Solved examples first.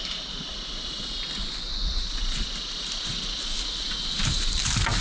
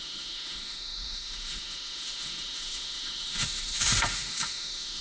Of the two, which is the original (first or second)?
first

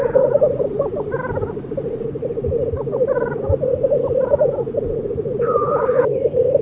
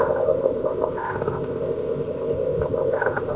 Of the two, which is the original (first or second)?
first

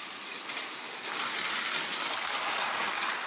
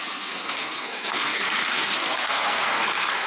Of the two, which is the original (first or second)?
first